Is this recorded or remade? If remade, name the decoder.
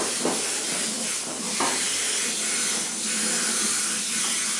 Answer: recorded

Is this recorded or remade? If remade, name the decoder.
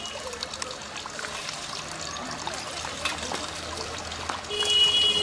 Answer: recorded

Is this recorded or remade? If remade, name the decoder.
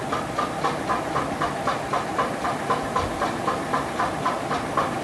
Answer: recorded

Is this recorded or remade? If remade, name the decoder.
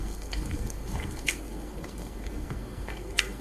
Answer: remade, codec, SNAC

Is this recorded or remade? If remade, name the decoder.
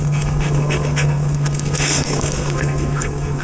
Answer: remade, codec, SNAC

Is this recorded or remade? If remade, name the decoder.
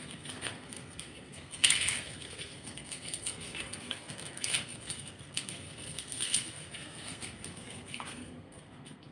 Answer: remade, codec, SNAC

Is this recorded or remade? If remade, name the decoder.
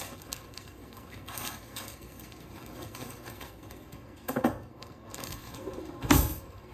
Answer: remade, codec, SNAC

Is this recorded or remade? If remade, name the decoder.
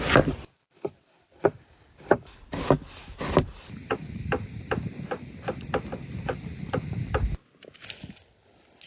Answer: recorded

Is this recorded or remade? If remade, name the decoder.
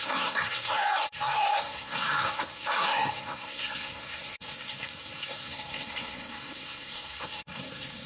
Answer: remade, codec, SNAC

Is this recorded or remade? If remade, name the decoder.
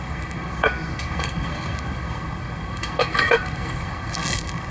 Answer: remade, codec, SNAC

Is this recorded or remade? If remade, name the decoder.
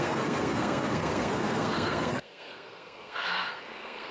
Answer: remade, codec, SNAC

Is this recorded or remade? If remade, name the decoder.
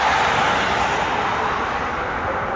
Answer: recorded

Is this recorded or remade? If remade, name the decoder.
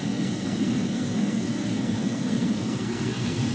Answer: remade, codec, SNAC